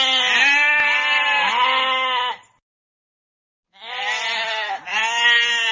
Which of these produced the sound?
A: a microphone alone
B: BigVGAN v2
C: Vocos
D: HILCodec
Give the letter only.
A